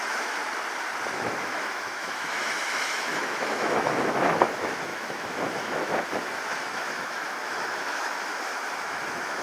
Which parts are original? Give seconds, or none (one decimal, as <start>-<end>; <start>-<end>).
0.4-1.1